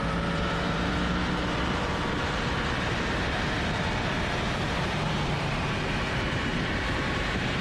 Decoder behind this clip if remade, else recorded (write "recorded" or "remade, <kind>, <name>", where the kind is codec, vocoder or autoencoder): remade, vocoder, BigVGAN v2